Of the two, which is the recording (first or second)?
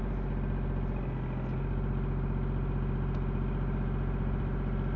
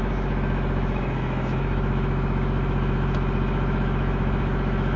first